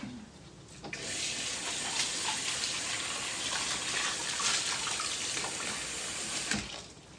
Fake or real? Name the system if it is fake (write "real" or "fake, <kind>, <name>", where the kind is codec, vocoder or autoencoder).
real